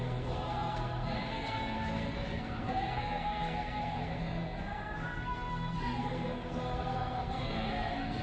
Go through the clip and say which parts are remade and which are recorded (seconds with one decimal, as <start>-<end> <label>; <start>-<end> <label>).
0.0-8.2 remade